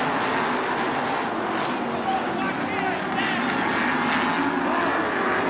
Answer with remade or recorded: recorded